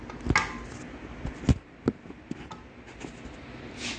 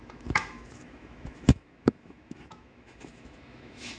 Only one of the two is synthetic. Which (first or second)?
second